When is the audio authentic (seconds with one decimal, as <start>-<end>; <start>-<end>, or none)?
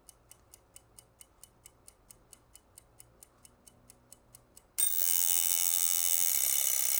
0.0-4.9; 6.3-7.0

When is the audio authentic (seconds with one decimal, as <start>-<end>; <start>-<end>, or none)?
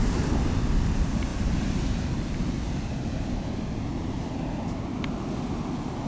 0.0-6.1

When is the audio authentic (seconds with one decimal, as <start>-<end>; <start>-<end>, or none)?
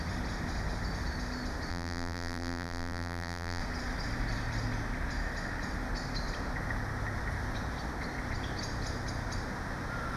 0.0-1.7; 3.6-10.2